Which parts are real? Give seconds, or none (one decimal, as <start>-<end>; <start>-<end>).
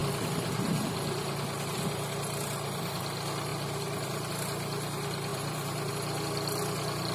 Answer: 0.5-3.5; 4.3-5.3; 5.9-7.1